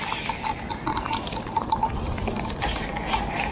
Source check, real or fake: real